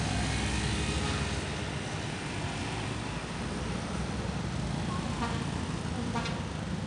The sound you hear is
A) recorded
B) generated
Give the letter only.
A